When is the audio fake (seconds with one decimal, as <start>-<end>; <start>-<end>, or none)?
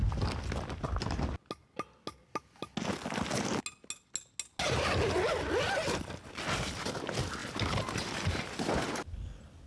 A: none